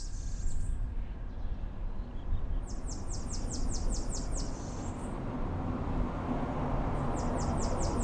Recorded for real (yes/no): yes